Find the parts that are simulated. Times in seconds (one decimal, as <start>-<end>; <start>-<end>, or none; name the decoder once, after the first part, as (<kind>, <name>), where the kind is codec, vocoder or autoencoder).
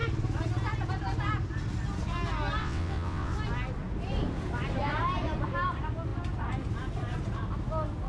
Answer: 2.6-3.3 (vocoder, WaveNeXt)